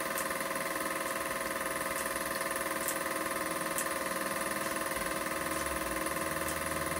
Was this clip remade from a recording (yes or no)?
no